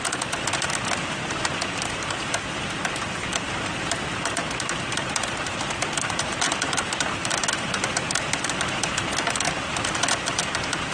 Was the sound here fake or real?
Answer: fake